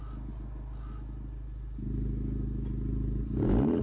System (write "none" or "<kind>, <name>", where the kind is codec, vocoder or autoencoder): none